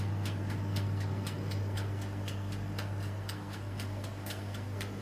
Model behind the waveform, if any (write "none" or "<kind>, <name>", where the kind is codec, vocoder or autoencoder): codec, SNAC